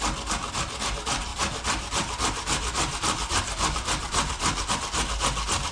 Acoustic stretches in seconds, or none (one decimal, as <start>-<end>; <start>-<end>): 0.0-1.3; 4.7-5.7